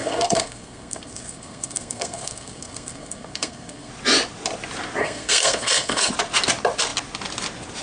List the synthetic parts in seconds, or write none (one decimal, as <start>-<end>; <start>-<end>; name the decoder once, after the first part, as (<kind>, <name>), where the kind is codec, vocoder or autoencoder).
0.0-3.9 (codec, SNAC); 5.0-6.1